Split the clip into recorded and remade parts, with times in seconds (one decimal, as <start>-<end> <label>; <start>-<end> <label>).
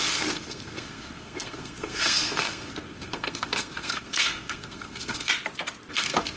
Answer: 0.0-5.3 remade; 5.3-5.9 recorded; 5.9-6.4 remade